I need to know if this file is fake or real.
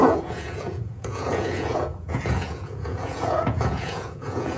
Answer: fake